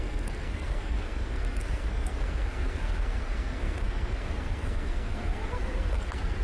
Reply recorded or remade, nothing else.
remade